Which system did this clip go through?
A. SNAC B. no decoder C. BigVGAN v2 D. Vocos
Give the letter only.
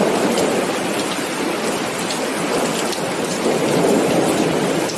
B